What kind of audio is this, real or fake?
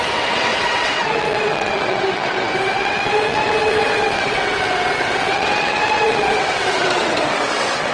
fake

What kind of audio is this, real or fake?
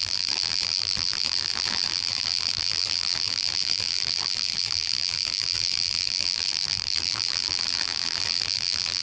fake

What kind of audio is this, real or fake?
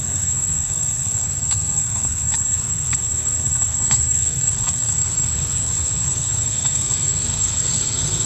fake